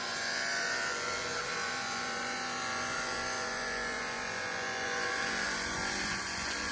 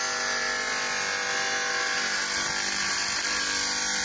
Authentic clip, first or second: second